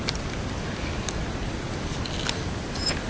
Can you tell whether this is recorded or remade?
recorded